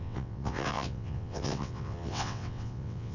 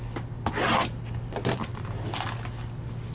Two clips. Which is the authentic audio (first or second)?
second